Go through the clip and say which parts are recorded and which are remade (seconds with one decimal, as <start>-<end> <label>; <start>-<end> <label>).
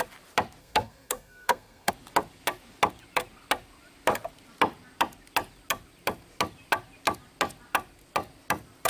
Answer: 0.0-0.6 recorded; 0.6-1.9 remade; 1.9-8.9 recorded